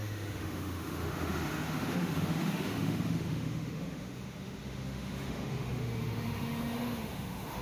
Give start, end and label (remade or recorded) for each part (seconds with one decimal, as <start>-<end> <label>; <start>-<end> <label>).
0.0-7.6 remade